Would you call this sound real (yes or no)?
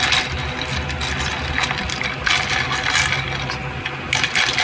yes